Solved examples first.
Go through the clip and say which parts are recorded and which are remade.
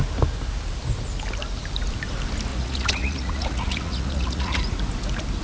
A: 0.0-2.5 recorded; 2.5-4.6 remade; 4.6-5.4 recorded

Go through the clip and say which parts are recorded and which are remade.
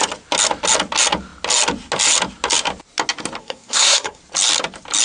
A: 0.0-3.4 recorded; 3.4-4.2 remade; 4.2-5.0 recorded